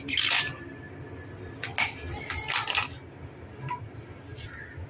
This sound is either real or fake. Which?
real